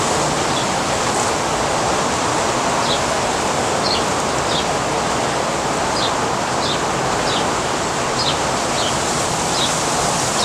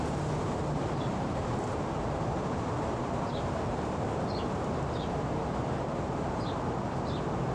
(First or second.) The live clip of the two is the first